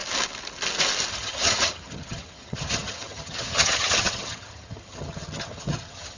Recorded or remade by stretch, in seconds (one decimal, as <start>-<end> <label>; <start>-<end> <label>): 0.0-1.1 recorded; 1.1-6.2 remade